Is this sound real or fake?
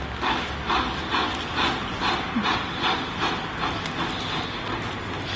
real